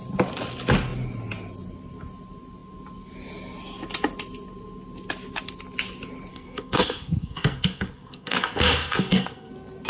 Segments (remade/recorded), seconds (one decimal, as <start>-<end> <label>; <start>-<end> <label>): 0.0-6.3 recorded; 6.3-9.5 remade; 9.5-9.9 recorded